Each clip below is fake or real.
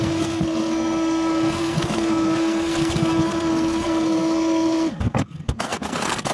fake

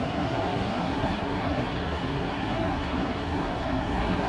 fake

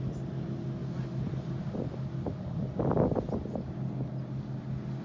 real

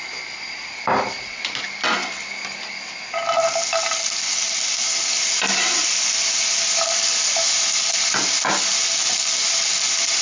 real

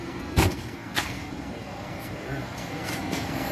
fake